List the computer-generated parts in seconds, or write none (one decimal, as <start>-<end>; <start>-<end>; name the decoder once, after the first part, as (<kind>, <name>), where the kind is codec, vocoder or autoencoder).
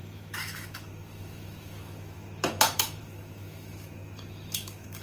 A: 0.0-5.0 (autoencoder, DAC-VAE)